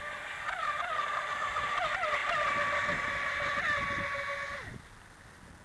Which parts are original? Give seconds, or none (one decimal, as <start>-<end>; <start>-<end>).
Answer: 0.0-5.6